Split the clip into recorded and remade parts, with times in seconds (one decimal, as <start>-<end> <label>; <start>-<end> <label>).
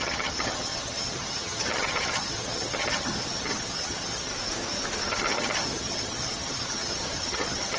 0.0-4.3 remade; 4.3-5.1 recorded; 5.1-7.8 remade